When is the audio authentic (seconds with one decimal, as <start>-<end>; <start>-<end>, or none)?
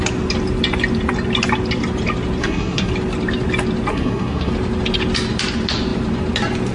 0.0-2.4; 2.9-3.9; 4.5-6.7